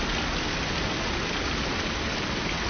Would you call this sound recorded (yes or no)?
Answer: yes